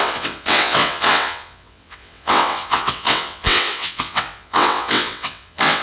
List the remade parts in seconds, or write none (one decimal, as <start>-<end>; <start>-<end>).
0.0-5.8